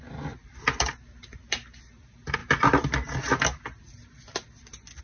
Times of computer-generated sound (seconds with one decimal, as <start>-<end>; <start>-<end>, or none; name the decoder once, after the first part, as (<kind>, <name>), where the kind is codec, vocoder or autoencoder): none

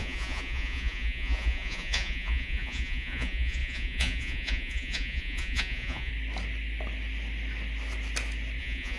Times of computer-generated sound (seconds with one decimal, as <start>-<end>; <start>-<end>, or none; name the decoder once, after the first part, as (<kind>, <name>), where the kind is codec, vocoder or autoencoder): 0.0-6.1 (vocoder, Vocos); 8.6-9.0

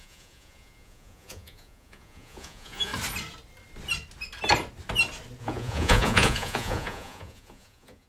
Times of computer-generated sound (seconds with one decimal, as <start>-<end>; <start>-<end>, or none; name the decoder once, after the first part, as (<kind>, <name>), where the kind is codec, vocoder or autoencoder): 0.0-2.9 (vocoder, Vocos); 5.4-8.1

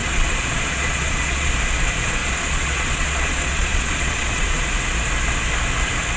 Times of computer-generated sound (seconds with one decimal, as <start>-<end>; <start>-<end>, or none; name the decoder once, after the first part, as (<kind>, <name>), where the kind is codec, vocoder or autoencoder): 0.0-1.5 (vocoder, Vocos); 2.2-4.7

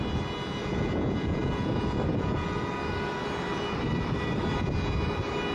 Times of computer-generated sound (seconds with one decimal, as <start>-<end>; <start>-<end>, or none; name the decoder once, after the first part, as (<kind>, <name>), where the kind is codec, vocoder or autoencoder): 0.6-2.7 (vocoder, Vocos)

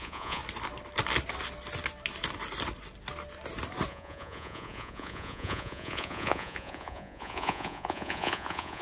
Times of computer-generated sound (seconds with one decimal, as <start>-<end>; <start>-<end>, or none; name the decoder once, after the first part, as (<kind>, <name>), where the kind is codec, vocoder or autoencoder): 0.0-0.4 (vocoder, Vocos); 3.9-8.8

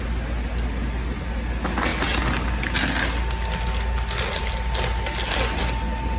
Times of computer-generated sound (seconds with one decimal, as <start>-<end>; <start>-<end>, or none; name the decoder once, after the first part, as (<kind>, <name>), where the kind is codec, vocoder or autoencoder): none

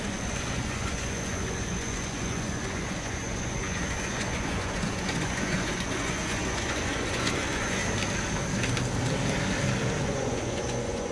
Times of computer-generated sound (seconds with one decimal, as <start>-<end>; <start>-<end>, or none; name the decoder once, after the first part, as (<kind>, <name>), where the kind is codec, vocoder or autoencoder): 0.0-7.8 (vocoder, Vocos); 10.0-11.1